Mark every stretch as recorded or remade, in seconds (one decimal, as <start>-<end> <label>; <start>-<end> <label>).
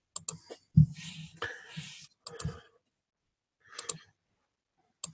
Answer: 0.0-5.1 recorded